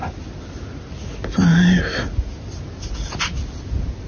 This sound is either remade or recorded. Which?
recorded